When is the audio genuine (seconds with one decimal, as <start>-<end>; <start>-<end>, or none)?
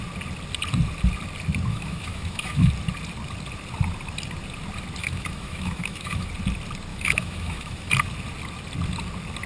0.0-1.7; 2.7-5.0; 6.3-6.9; 7.9-9.5